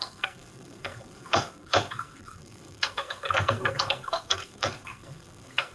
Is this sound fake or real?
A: fake